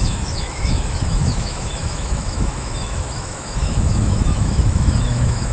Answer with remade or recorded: remade